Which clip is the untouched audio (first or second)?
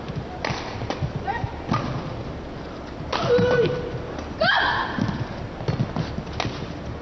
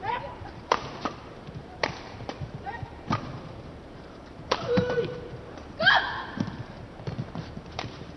first